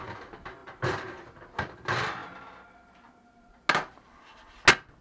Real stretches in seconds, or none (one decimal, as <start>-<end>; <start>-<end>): 0.0-5.0